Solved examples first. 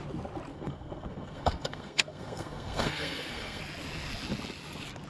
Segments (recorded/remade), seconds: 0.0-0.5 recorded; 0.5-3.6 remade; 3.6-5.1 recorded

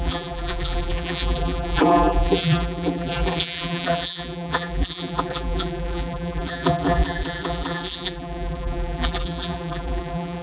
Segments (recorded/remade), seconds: 0.0-10.4 remade

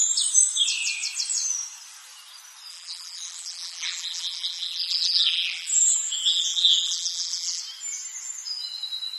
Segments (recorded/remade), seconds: 0.0-2.7 recorded; 2.7-7.6 remade; 7.6-9.2 recorded

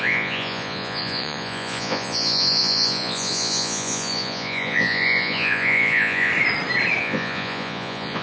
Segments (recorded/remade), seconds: 0.0-6.3 remade; 6.3-7.0 recorded; 7.0-8.2 remade